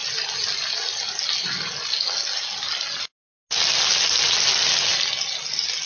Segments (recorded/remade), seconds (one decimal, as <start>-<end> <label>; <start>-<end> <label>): 0.0-5.9 recorded